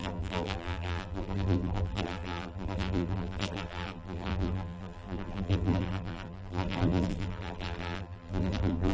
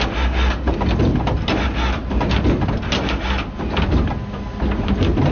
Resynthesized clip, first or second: first